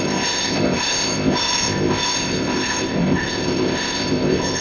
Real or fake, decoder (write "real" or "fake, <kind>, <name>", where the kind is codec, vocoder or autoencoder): fake, codec, ZipCodec